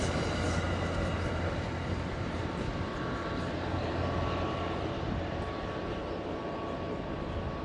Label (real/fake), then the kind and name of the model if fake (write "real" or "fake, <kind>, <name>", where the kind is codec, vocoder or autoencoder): real